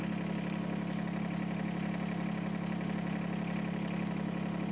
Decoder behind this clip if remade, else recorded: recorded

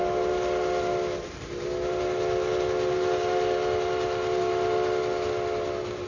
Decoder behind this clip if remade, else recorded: recorded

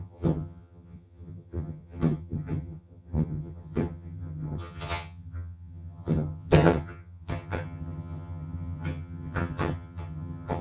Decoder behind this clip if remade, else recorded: remade, vocoder, HiFi-GAN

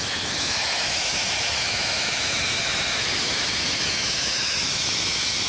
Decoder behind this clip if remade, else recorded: remade, autoencoder, DAC-VAE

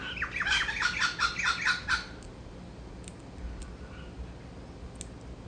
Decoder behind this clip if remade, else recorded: recorded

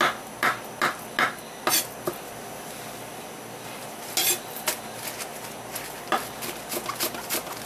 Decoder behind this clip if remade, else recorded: recorded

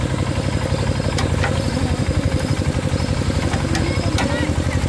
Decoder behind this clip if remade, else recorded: recorded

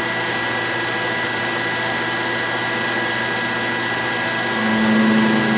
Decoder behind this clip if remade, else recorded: recorded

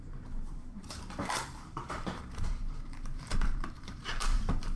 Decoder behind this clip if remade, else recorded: remade, vocoder, BigVGAN v2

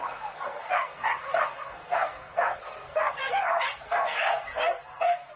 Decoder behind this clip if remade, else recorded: remade, codec, SNAC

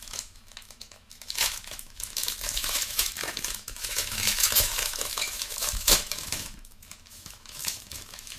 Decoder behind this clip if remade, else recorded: remade, autoencoder, DAC-VAE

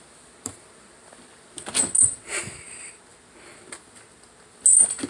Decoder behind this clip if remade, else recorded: recorded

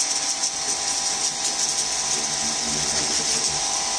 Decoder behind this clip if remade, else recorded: recorded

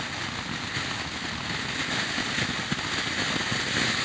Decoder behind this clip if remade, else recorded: recorded